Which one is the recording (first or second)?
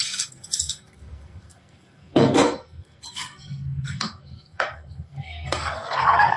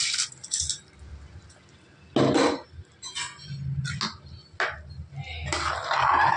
second